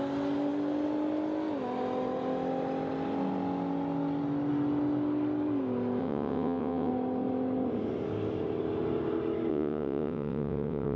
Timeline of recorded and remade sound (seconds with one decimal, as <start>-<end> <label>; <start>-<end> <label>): 0.0-6.0 recorded; 6.0-6.9 remade; 6.9-9.5 recorded; 9.5-11.0 remade